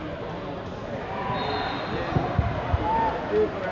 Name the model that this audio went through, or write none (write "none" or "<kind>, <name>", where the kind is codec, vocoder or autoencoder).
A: none